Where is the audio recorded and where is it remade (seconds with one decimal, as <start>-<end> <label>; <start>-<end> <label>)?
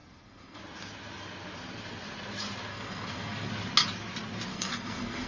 0.0-0.6 remade; 0.6-2.7 recorded; 2.7-3.5 remade; 3.5-4.5 recorded; 4.5-5.3 remade